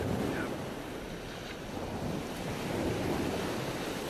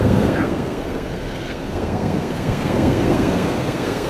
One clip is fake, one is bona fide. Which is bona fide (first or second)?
first